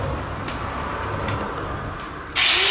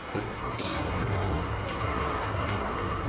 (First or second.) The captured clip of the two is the first